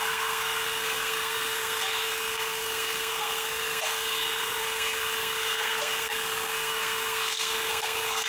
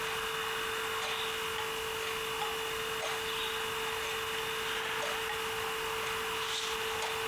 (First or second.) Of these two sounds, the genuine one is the second